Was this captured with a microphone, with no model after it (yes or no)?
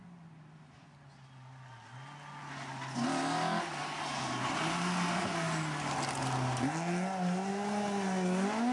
yes